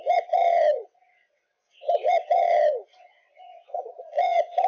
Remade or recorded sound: remade